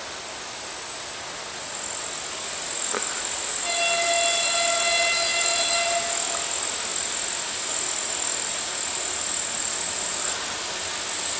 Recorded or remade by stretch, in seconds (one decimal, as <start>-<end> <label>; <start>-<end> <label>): 0.0-11.4 recorded